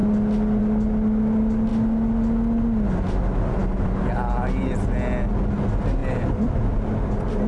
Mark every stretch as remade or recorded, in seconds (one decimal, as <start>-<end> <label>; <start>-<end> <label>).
0.0-6.0 recorded; 6.0-7.5 remade

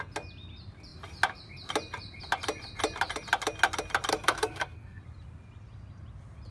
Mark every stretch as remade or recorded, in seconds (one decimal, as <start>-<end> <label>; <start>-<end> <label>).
0.0-4.1 recorded; 4.1-5.0 remade; 5.0-6.5 recorded

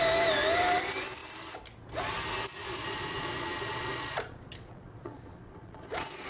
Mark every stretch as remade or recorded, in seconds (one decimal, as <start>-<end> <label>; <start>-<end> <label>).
0.0-2.5 recorded; 2.5-6.3 remade

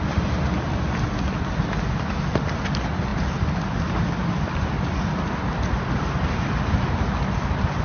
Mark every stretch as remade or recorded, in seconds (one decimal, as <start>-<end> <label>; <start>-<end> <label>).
0.0-7.8 recorded

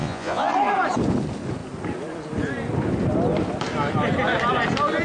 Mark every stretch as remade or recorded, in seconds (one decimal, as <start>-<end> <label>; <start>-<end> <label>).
0.0-0.5 remade; 0.5-5.0 recorded

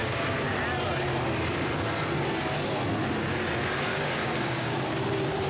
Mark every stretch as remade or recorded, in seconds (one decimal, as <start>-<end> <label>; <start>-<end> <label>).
0.0-0.6 remade; 0.6-3.9 recorded; 3.9-4.8 remade; 4.8-5.5 recorded

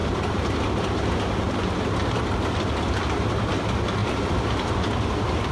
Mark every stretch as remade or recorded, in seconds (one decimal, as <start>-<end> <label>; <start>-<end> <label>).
0.0-4.0 recorded; 4.0-4.7 remade; 4.7-5.5 recorded

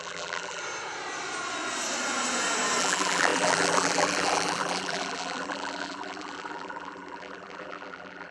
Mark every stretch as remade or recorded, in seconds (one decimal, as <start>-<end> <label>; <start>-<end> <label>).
0.0-0.6 remade; 0.6-2.8 recorded; 2.8-8.3 remade